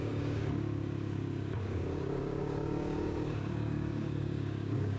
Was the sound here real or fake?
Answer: fake